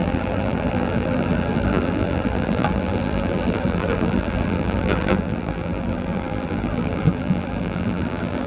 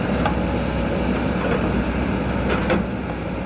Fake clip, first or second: first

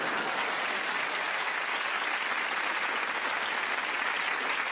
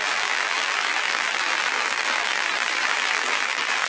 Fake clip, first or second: second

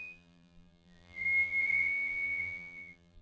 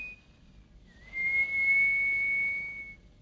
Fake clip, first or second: first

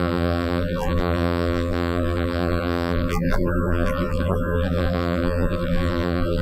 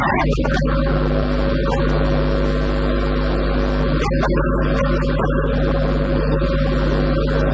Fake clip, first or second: first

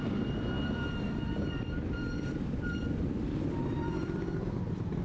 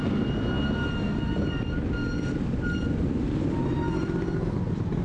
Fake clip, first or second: first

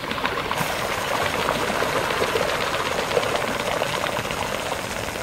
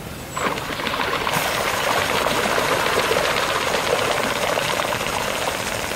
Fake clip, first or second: second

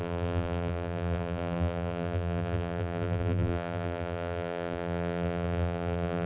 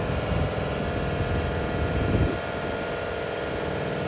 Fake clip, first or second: first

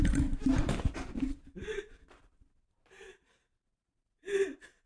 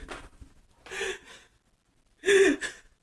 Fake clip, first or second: first